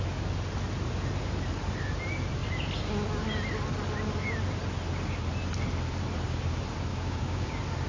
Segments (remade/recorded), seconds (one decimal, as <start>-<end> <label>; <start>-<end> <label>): 0.0-6.9 recorded; 6.9-7.5 remade; 7.5-7.9 recorded